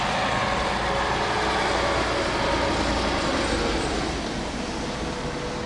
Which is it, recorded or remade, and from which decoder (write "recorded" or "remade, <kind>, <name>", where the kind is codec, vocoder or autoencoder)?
recorded